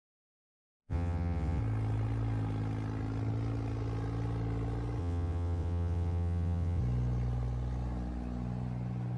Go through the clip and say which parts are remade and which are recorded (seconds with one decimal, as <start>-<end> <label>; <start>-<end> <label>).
0.0-1.6 remade; 1.6-5.0 recorded; 5.0-6.8 remade; 6.8-9.2 recorded